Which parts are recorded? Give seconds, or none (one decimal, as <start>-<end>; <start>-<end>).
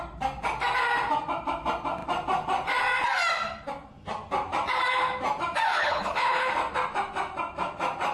0.0-5.7; 6.5-8.1